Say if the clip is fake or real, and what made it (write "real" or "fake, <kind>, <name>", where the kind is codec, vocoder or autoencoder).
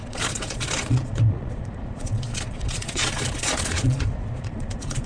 fake, vocoder, Vocos